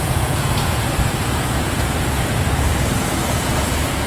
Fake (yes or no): yes